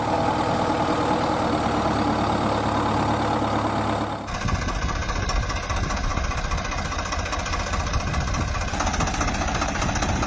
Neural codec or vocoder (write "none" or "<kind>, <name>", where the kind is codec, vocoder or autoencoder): none